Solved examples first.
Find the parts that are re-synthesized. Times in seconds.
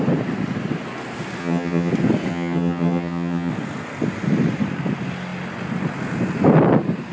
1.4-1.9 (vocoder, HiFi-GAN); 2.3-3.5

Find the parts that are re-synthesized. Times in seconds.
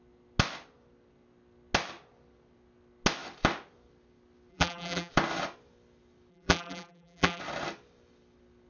4.5-5.1 (vocoder, BigVGAN v2); 6.3-7.4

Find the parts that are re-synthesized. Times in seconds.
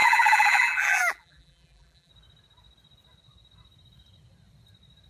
0.0-2.1 (vocoder, BigVGAN v2)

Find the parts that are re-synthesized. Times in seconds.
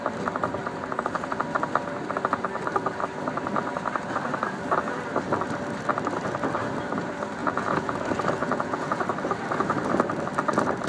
7.4-7.9 (vocoder, Vocos); 8.4-9.0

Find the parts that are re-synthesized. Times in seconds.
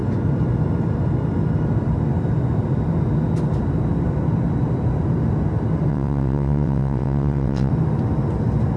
5.9-7.7 (vocoder, WaveNeXt)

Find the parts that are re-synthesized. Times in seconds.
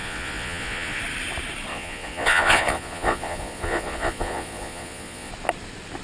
0.0-1.0 (vocoder, Vocos); 1.7-5.3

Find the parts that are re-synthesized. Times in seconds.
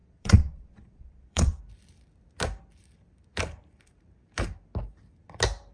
0.0-1.6 (vocoder, Vocos)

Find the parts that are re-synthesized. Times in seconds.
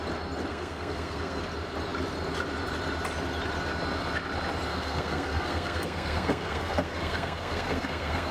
0.5-1.4 (codec, SNAC); 4.7-8.3